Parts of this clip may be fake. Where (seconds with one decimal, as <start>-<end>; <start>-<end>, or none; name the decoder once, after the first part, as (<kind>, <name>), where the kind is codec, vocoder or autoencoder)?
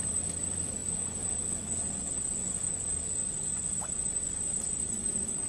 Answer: 0.0-0.8 (vocoder, BigVGAN v2); 4.1-5.5